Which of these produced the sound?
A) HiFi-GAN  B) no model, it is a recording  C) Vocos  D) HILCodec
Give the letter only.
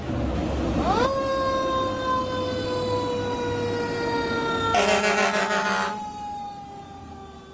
B